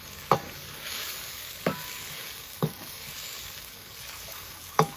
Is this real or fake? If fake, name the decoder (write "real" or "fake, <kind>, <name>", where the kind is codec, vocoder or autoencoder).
fake, codec, DAC